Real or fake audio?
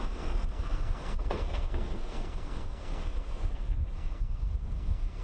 fake